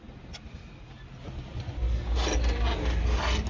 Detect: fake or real real